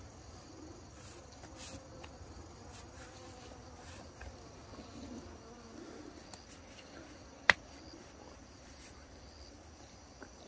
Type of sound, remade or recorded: recorded